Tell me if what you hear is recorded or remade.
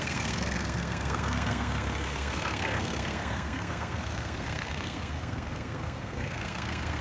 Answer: remade